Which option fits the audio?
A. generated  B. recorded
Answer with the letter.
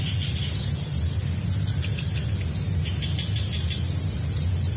B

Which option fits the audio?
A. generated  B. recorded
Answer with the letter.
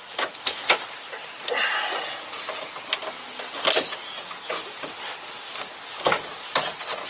B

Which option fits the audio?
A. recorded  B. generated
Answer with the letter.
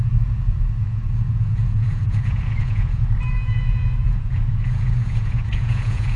B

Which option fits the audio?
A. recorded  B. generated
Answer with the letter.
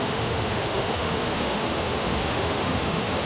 B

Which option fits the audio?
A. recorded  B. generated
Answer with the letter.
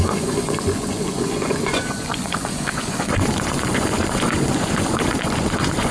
B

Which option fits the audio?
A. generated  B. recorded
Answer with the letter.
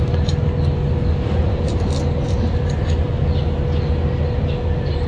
B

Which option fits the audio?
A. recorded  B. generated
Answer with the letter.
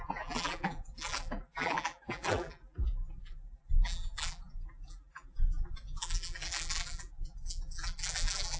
B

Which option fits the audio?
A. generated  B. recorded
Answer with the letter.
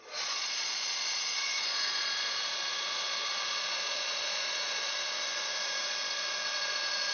A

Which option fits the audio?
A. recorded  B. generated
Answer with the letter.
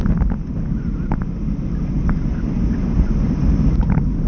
A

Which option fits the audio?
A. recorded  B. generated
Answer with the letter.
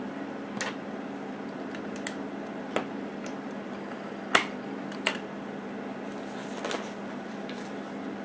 A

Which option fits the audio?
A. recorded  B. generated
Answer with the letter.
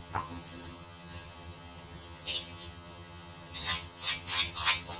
B